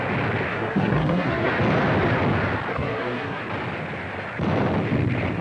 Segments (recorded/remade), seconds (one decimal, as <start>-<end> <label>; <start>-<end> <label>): 0.0-0.5 recorded; 0.5-1.5 remade; 1.5-2.7 recorded; 2.7-3.4 remade; 3.4-5.4 recorded

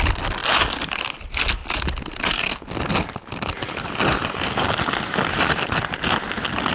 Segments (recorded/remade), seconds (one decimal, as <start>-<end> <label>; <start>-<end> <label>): 0.0-1.6 recorded; 1.6-4.4 remade; 4.4-6.7 recorded